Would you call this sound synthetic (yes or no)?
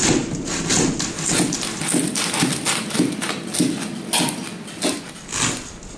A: no